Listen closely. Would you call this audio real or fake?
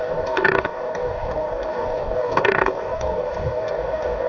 fake